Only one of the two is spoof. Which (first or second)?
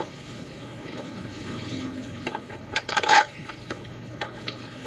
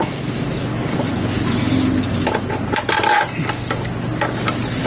first